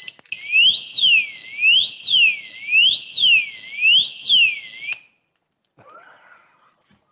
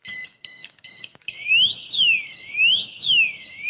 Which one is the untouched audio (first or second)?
first